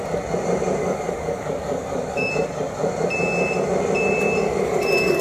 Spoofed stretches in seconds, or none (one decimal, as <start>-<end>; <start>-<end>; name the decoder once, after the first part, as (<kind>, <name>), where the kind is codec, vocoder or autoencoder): 0.8-2.3 (codec, DAC); 4.4-5.2